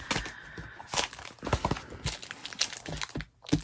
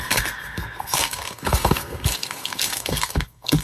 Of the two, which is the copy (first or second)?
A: second